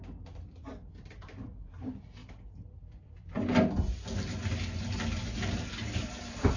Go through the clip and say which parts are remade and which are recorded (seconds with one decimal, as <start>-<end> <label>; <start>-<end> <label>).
0.0-6.6 recorded